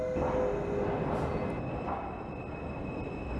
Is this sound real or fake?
real